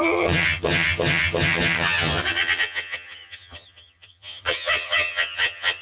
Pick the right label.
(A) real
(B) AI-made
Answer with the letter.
B